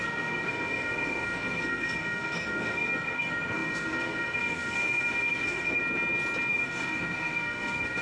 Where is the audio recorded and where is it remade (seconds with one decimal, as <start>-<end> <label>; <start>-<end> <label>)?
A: 0.0-5.8 remade; 5.8-6.5 recorded; 6.5-8.0 remade

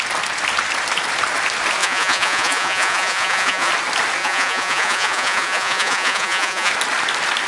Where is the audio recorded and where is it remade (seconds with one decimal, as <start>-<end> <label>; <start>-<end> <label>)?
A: 0.0-1.8 recorded; 1.8-3.7 remade; 3.7-4.2 recorded; 4.2-6.7 remade; 6.7-7.5 recorded

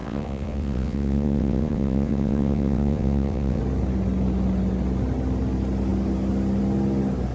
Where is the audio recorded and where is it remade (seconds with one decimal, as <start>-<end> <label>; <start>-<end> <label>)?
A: 0.0-3.6 remade; 3.6-7.3 recorded